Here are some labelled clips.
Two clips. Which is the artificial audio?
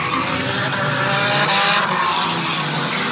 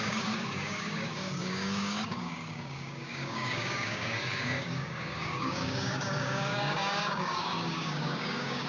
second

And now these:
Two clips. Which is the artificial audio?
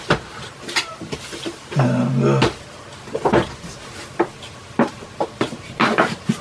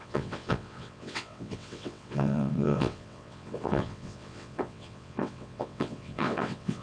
second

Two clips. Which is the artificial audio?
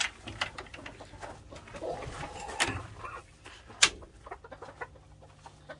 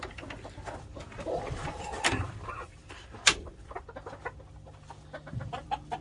second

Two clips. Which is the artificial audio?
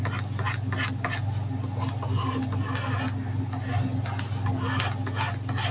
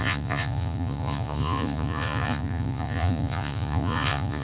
second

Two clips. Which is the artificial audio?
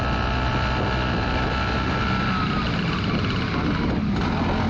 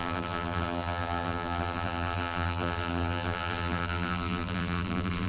second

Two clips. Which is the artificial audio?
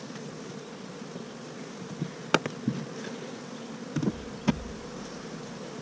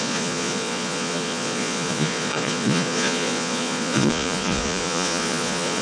second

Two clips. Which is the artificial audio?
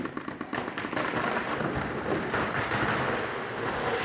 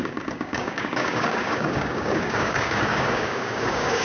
second